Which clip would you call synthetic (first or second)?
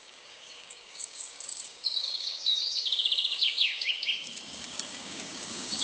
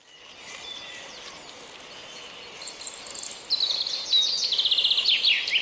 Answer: first